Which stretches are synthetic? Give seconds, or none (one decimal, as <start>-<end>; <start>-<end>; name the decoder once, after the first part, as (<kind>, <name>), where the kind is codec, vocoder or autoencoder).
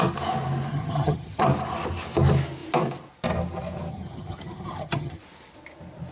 0.7-1.4 (vocoder, HiFi-GAN); 3.9-5.2